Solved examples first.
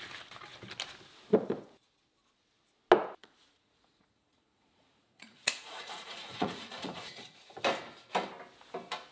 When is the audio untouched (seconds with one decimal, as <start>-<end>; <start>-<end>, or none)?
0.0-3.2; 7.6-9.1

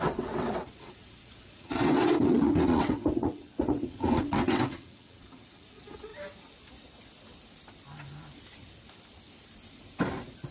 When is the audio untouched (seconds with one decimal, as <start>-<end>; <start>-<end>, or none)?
6.1-10.5

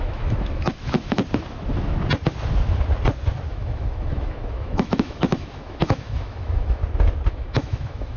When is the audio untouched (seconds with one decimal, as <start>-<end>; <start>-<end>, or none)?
1.2-3.5; 6.8-7.3

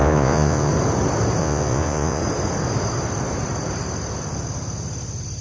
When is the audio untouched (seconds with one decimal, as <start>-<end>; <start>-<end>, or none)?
0.7-1.4; 2.2-5.4